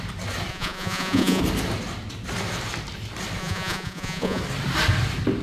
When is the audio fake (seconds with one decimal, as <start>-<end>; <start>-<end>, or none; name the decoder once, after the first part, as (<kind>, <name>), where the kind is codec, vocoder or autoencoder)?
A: 0.5-1.4 (vocoder, Vocos); 3.4-4.4